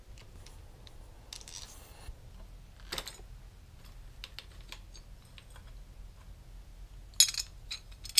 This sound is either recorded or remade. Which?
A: recorded